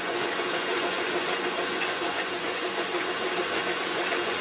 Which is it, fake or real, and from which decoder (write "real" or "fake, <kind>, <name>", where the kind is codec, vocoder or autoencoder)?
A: fake, vocoder, Vocos